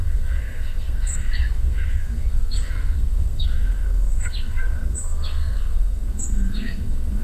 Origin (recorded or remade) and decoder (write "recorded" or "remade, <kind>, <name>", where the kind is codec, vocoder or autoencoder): remade, codec, SNAC